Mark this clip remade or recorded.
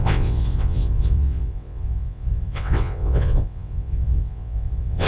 remade